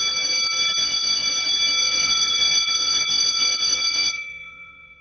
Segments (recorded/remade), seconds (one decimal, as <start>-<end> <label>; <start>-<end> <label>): 0.0-0.8 recorded; 0.8-1.3 remade; 1.3-1.8 recorded; 1.8-5.0 remade